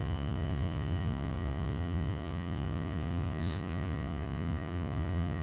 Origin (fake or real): fake